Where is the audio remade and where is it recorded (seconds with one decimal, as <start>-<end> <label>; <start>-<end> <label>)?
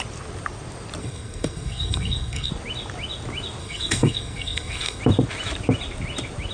0.0-1.0 recorded; 1.0-2.5 remade; 2.5-3.6 recorded; 3.6-5.0 remade; 5.0-6.5 recorded